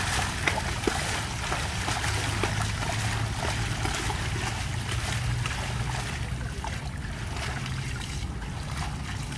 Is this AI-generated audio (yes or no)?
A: no